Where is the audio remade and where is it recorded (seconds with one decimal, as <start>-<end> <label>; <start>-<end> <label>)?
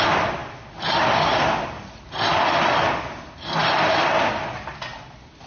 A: 0.0-5.5 recorded